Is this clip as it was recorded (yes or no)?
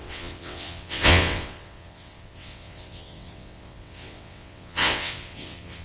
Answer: no